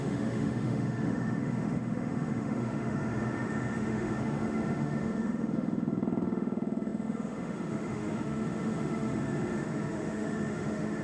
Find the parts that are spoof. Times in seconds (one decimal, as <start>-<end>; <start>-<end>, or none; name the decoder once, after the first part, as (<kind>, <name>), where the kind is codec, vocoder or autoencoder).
0.0-11.0 (autoencoder, DAC-VAE)